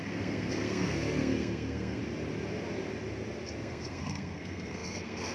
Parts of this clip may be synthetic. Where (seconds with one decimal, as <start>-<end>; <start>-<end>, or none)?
0.0-2.0; 3.6-5.3